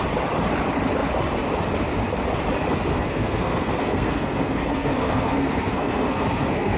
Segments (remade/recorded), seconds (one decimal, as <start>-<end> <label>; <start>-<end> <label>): 0.0-2.9 recorded; 2.9-6.8 remade